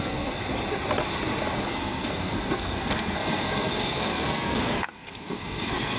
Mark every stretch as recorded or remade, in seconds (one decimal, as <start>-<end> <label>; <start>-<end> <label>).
0.0-0.4 remade; 0.4-1.7 recorded; 1.7-6.0 remade